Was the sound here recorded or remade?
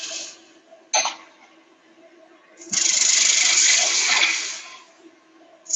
recorded